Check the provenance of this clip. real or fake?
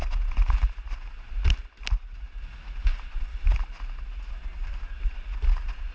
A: real